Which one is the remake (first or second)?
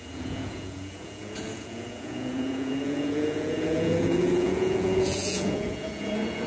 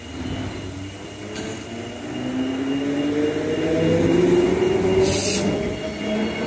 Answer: first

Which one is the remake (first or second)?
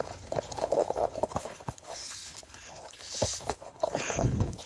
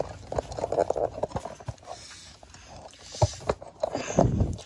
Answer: first